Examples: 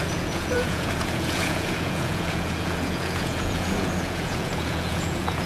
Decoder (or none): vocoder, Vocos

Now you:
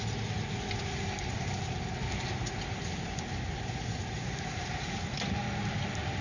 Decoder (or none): none